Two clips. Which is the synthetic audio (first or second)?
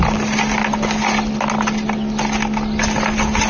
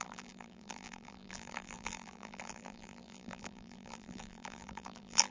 second